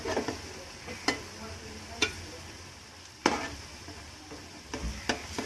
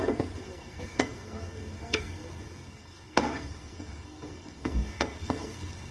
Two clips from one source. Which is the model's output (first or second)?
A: second